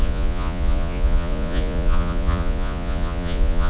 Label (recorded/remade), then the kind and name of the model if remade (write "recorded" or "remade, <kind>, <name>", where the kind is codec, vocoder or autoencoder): remade, vocoder, Vocos